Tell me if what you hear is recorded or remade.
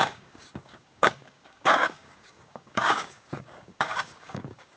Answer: remade